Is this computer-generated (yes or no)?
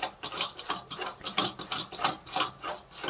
yes